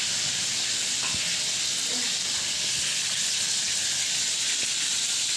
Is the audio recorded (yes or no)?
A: yes